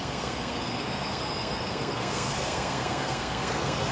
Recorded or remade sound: remade